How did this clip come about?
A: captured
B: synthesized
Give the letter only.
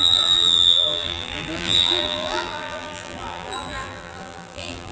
B